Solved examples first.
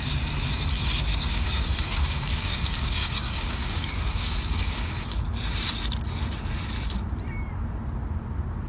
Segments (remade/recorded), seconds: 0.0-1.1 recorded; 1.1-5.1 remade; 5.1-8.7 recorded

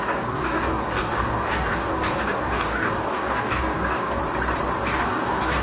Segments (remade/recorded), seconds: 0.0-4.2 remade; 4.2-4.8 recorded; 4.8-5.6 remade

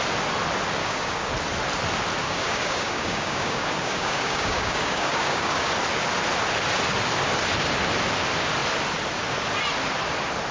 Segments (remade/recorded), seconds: 0.0-0.8 recorded; 0.8-1.3 remade; 1.3-2.2 recorded; 2.2-5.7 remade; 5.7-10.5 recorded

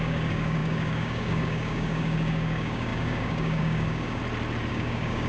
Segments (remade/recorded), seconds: 0.0-4.2 remade; 4.2-4.7 recorded; 4.7-5.3 remade

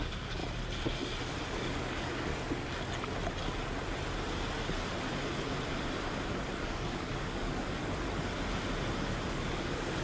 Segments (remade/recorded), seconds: 0.0-0.4 remade; 0.4-1.6 recorded; 1.6-2.3 remade; 2.3-6.6 recorded; 6.6-7.8 remade; 7.8-9.3 recorded; 9.3-10.0 remade